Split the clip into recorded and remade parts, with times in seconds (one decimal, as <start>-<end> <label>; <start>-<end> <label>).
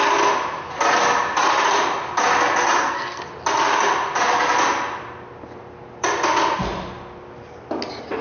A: 0.0-2.8 recorded; 2.8-3.3 remade; 3.3-8.2 recorded